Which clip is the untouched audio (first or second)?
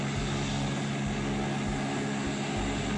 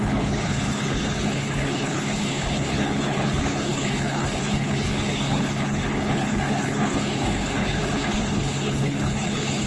first